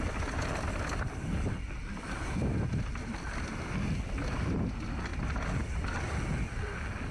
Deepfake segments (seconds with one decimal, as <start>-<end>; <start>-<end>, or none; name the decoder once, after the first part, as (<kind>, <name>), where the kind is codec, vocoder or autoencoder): none